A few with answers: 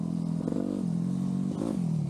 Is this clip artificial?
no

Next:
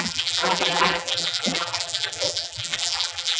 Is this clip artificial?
yes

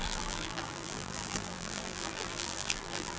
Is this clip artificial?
yes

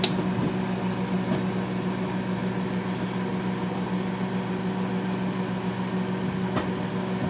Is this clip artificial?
no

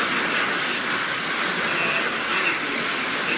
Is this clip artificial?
no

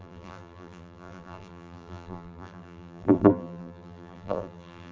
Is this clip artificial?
yes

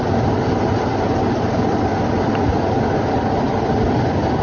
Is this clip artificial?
yes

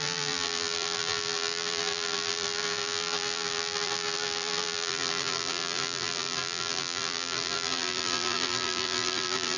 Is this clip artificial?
yes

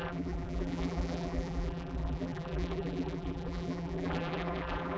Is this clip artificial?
yes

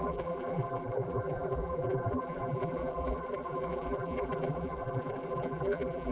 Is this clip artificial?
yes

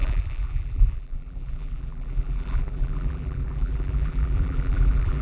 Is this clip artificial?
yes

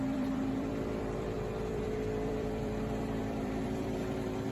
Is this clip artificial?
yes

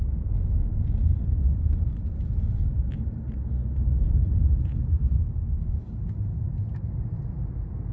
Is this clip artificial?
yes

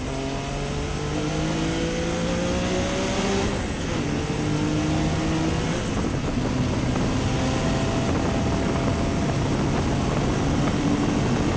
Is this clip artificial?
no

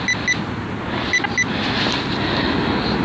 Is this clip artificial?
no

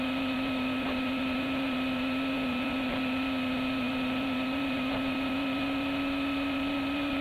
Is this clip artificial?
yes